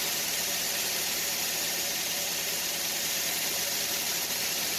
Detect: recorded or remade remade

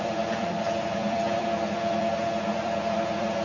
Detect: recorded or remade remade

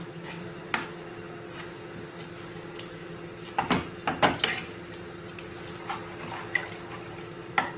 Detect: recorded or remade recorded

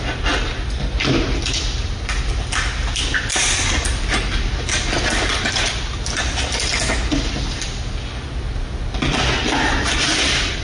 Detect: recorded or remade recorded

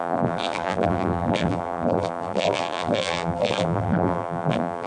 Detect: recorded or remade remade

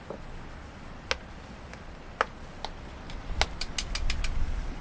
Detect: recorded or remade recorded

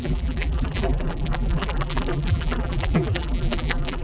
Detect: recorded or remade remade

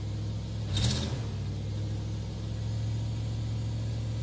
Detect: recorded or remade recorded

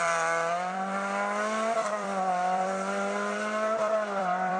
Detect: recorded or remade remade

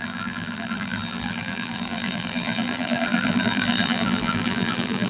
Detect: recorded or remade remade